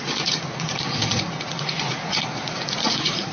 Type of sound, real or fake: fake